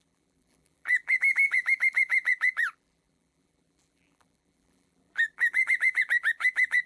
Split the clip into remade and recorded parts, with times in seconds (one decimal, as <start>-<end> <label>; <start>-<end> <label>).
0.0-6.9 remade